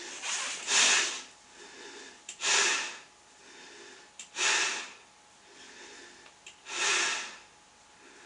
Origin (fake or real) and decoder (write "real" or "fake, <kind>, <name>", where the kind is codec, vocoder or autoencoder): real